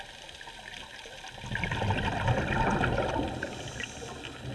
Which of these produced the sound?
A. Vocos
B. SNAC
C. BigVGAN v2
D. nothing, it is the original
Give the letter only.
D